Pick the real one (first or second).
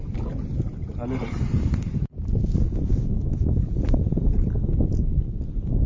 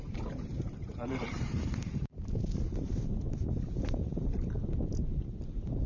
first